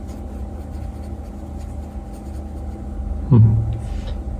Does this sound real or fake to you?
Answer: real